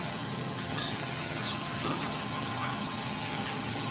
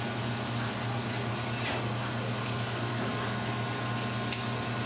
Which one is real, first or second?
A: second